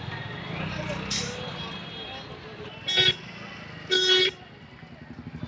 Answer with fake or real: real